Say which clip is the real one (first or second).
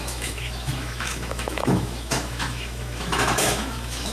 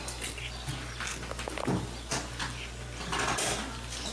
second